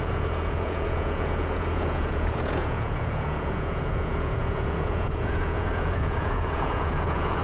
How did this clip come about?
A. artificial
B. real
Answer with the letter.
A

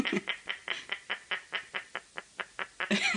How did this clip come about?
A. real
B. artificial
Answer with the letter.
A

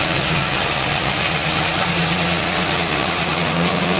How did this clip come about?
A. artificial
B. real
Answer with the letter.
A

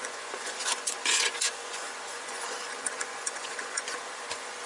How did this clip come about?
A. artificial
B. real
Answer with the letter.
A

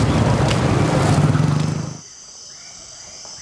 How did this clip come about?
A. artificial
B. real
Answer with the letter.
B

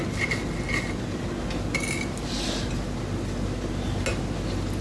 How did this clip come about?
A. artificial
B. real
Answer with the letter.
B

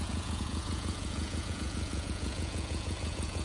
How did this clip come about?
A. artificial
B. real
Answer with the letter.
A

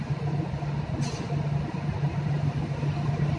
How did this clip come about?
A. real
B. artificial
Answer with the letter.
A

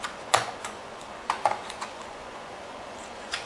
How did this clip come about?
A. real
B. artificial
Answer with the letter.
B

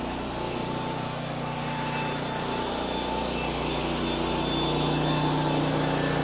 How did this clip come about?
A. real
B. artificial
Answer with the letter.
A